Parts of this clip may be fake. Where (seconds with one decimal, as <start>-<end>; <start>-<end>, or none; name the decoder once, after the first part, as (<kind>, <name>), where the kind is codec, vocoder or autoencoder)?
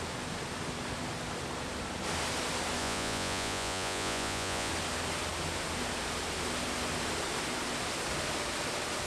2.8-4.7 (vocoder, Vocos)